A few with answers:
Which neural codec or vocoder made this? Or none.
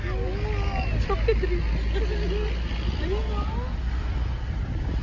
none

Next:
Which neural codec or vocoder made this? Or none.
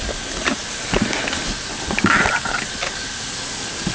none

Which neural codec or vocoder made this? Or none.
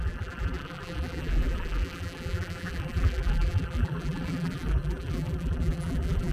vocoder, BigVGAN v2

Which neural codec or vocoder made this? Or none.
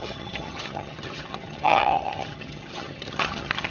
vocoder, HiFi-GAN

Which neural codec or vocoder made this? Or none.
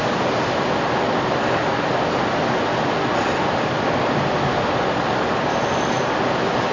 none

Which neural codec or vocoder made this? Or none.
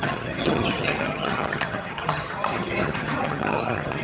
vocoder, HiFi-GAN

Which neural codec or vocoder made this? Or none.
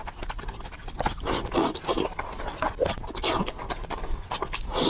none